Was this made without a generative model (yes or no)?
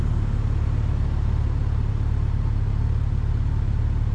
yes